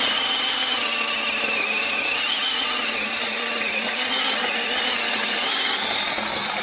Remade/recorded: recorded